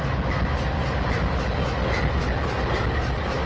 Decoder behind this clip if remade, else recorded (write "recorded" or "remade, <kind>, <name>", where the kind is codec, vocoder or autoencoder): recorded